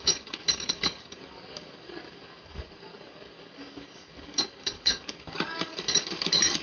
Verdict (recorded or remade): remade